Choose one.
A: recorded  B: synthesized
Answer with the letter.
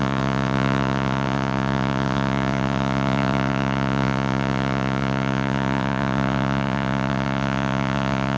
B